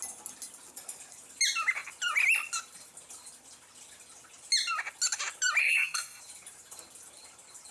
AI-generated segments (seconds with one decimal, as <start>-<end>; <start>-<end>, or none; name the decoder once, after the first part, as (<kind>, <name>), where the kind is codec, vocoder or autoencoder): 5.6-6.2 (codec, SNAC)

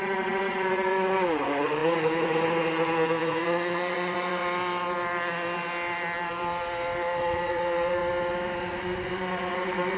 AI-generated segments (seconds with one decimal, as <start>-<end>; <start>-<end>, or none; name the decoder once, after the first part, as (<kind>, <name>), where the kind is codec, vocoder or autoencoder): 0.0-4.4 (vocoder, Vocos); 7.2-8.0; 8.6-10.0

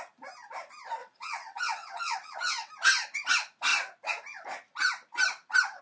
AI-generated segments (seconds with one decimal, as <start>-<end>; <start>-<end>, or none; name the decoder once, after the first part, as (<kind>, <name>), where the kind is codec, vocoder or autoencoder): 1.0-2.7 (vocoder, WaveNeXt)

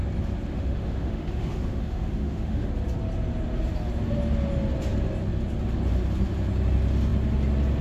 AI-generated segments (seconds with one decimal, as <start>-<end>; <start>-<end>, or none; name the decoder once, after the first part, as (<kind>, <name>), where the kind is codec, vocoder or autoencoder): 0.5-2.7 (autoencoder, DAC-VAE)

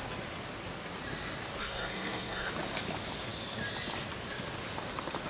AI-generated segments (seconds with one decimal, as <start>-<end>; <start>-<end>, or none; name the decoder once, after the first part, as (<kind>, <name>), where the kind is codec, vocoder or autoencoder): 1.6-2.5 (codec, SNAC)

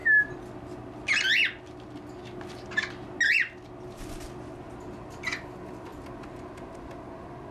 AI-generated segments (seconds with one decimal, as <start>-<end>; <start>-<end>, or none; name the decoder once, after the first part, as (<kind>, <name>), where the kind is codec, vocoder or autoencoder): none

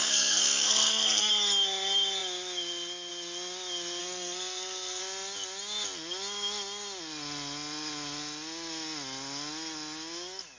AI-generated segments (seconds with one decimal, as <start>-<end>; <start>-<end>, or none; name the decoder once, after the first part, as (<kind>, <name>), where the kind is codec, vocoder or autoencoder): 0.0-1.3 (codec, SNAC); 4.0-5.0